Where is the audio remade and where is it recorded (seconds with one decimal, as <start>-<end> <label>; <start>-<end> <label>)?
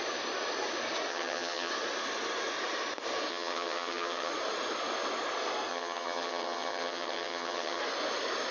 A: 0.0-1.1 recorded; 1.1-1.7 remade; 1.7-3.3 recorded; 3.3-4.3 remade; 4.3-5.7 recorded; 5.7-7.8 remade; 7.8-8.5 recorded